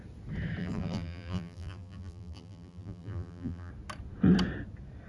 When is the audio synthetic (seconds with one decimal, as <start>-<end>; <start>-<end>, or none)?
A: 0.6-3.7

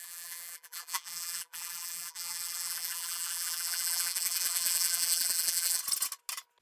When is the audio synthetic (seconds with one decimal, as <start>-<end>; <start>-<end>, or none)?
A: 0.0-5.8

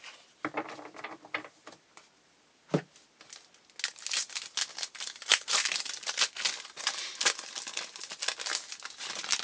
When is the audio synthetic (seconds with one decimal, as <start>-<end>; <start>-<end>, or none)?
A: 5.3-6.2

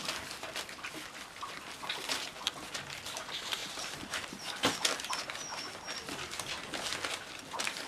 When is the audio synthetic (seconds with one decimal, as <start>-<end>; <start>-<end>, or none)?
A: none

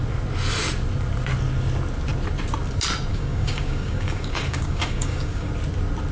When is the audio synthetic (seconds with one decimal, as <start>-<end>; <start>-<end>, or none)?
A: 3.1-5.5

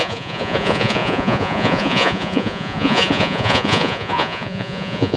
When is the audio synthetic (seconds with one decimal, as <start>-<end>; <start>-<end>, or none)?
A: 0.0-5.2

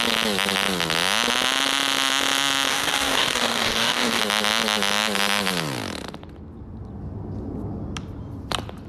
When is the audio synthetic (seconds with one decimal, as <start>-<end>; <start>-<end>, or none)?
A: 2.7-4.2

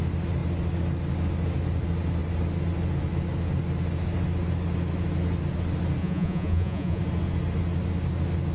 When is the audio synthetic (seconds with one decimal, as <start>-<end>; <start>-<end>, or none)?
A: 6.0-7.0